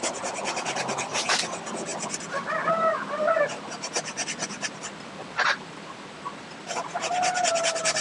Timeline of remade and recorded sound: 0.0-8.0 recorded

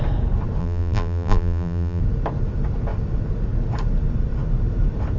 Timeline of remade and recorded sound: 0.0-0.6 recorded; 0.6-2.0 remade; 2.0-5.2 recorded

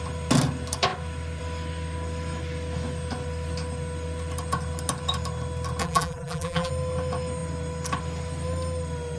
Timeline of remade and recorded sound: 0.0-5.8 recorded; 5.8-6.7 remade; 6.7-9.2 recorded

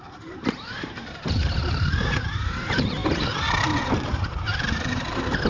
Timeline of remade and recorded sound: 0.0-3.0 remade; 3.0-3.8 recorded; 3.8-5.5 remade

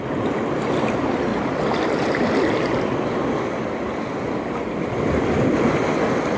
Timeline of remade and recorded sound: 0.0-1.3 recorded; 1.3-5.1 remade; 5.1-6.4 recorded